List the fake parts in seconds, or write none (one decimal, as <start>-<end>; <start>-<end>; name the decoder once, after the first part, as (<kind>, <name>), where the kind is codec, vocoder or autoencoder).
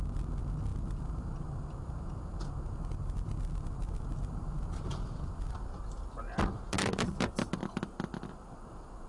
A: none